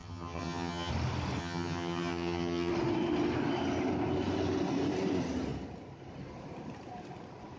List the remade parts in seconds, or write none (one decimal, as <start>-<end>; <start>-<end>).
0.0-0.9; 1.4-2.7